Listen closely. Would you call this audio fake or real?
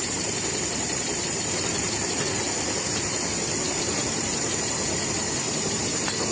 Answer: fake